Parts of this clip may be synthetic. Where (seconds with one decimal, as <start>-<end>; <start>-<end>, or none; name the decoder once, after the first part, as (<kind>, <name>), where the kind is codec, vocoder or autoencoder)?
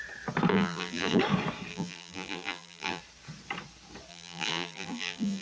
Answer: 0.5-1.2 (vocoder, BigVGAN v2); 1.7-3.0; 4.1-5.4